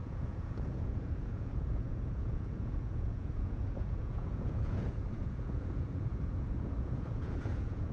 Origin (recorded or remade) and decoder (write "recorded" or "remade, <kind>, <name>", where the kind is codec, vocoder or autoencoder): remade, vocoder, Vocos